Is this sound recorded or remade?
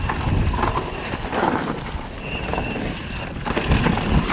recorded